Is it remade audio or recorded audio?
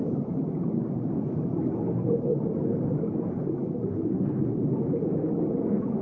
recorded